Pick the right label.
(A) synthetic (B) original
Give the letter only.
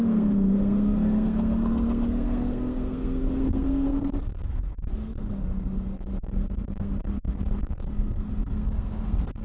A